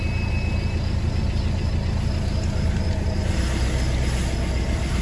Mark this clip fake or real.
real